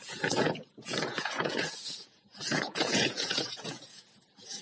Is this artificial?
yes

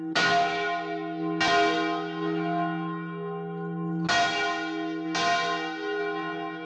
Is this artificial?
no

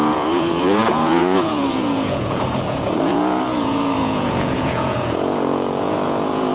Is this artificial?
yes